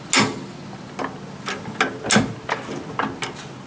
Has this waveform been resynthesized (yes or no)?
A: no